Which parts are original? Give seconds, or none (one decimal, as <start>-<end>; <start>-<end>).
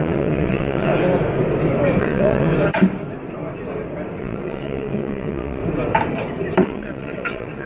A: 0.9-2.0; 2.5-4.2; 5.6-6.6